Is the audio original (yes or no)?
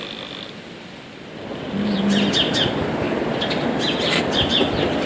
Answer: yes